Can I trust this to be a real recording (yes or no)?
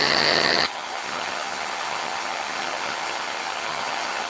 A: no